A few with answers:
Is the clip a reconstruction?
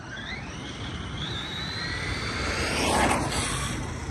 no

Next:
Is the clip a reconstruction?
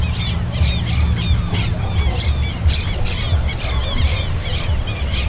no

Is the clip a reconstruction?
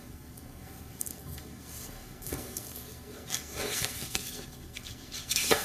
yes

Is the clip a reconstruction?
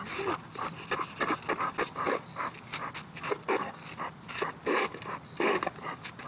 no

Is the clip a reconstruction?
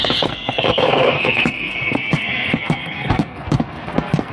yes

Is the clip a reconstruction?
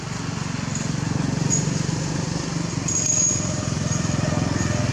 no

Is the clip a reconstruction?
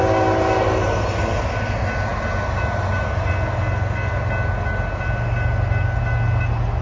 no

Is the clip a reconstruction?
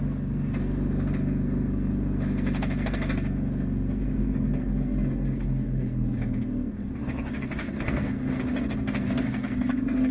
yes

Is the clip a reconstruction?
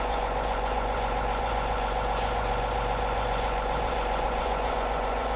yes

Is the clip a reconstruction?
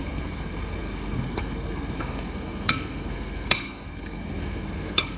yes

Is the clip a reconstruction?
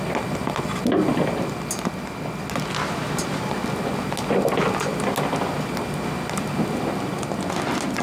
no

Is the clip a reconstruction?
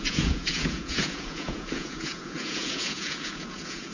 yes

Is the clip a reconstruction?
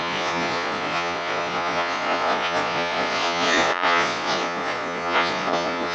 yes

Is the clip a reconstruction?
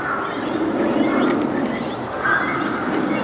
no